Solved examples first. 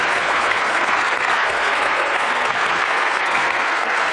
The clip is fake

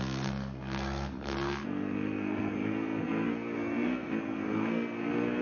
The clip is fake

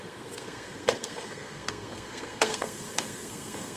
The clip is fake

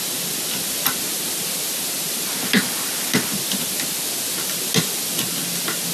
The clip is real